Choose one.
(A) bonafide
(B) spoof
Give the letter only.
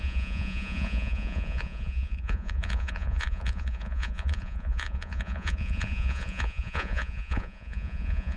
B